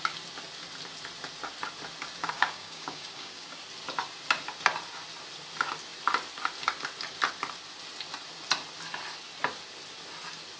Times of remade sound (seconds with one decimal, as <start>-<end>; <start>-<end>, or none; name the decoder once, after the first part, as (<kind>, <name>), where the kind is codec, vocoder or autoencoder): 2.2-3.6 (codec, DAC)